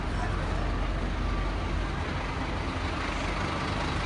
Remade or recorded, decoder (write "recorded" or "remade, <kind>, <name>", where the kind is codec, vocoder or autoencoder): recorded